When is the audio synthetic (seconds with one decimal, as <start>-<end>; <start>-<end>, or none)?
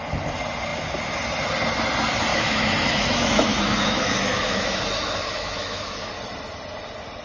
2.3-6.1